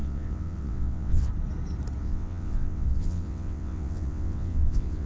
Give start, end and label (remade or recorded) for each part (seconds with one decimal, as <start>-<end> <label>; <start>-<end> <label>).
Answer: 0.0-1.3 remade; 1.3-2.0 recorded; 2.0-5.1 remade